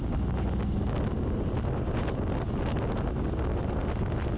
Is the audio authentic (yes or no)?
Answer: yes